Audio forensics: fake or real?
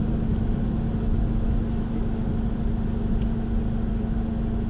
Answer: real